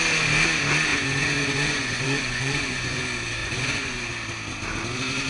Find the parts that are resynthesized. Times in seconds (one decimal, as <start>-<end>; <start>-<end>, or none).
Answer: 0.9-3.0; 3.4-4.1